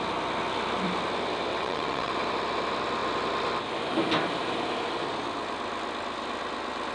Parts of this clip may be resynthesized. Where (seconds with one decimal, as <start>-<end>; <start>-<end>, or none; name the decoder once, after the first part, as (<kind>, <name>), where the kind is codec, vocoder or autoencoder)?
1.5-2.1 (vocoder, WaveNeXt)